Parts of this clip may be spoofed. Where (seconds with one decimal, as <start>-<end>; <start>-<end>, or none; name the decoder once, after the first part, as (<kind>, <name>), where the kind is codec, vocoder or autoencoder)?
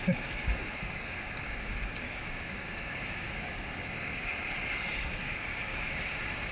0.4-4.3 (codec, DAC); 5.1-6.0